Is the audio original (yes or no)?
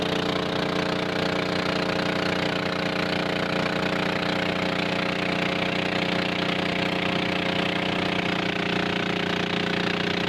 yes